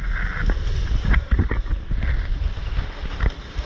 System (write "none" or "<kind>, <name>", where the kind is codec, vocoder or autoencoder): none